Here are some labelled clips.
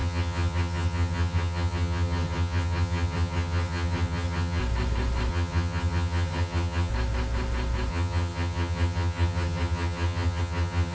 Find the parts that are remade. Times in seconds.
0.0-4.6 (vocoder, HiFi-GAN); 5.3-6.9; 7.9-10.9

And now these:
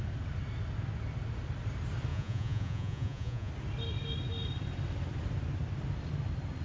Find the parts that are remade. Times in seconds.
2.1-3.5 (vocoder, Vocos)

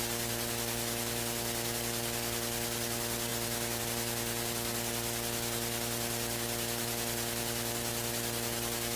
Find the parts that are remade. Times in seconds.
none

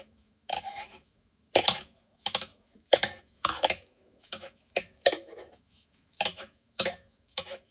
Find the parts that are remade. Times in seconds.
0.0-7.7 (autoencoder, DAC-VAE)

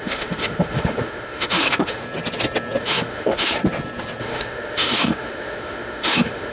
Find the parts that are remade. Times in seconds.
0.0-2.0 (autoencoder, DAC-VAE); 2.8-3.6; 4.2-6.5

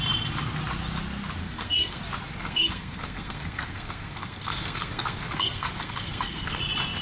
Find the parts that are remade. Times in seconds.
1.4-2.0 (codec, SNAC); 2.4-6.6

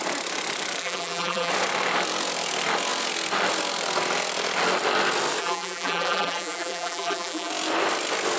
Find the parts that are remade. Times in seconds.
0.8-1.5 (vocoder, BigVGAN v2); 5.4-7.5

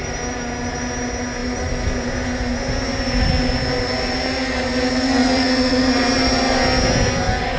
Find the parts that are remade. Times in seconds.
5.2-5.9 (vocoder, Vocos)